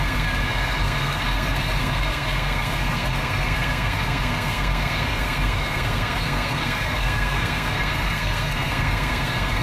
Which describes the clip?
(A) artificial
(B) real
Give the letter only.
A